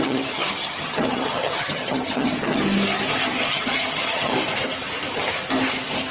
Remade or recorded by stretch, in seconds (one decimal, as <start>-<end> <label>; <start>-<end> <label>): 0.0-2.6 remade; 2.6-3.5 recorded; 3.5-4.3 remade; 4.3-6.1 recorded